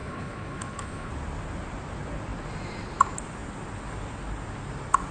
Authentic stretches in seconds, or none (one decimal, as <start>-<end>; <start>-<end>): 1.1-5.1